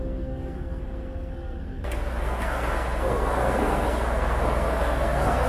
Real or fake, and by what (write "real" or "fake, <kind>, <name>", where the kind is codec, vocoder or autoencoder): fake, codec, SNAC